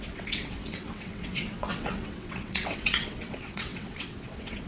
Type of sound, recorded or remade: remade